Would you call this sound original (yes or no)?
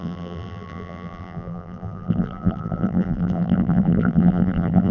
no